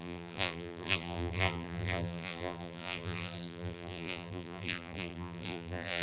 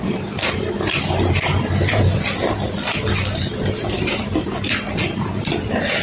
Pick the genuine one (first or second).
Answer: second